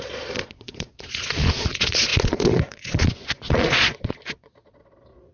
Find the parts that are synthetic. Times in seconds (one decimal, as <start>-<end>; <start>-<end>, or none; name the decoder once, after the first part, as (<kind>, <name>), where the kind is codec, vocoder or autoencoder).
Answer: 0.0-5.3 (vocoder, Vocos)